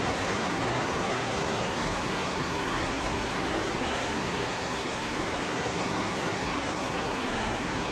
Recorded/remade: remade